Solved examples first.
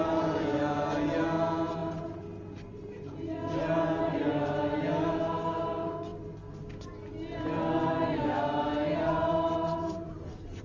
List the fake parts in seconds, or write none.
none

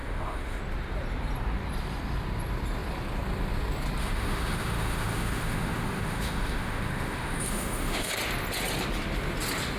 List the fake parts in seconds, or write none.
0.0-0.6; 4.0-8.1

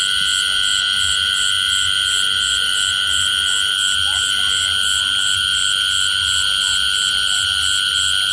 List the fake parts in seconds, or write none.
none

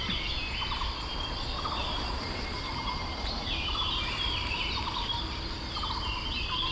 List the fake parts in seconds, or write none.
1.8-5.1

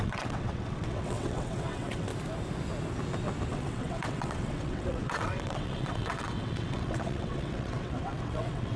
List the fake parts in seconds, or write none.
0.0-2.1; 3.5-8.8

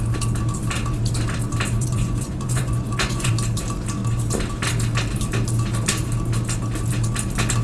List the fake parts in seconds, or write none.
1.8-3.3

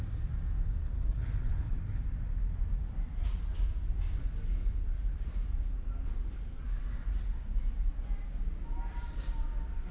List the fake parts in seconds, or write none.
0.8-2.0

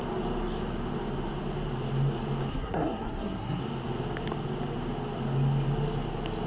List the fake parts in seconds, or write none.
2.5-3.6